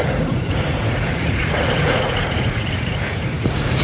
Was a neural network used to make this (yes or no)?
yes